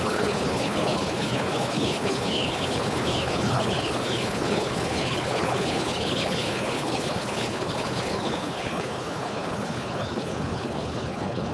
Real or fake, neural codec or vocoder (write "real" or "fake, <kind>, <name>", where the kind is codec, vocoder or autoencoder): fake, codec, HILCodec